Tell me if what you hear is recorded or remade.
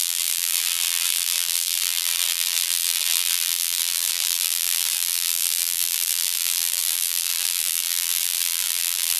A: remade